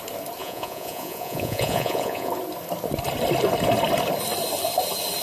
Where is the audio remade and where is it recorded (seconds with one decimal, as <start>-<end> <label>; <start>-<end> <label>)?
0.0-0.4 recorded; 0.4-2.3 remade; 2.3-5.2 recorded